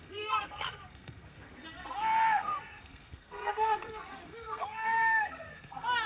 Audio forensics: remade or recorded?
remade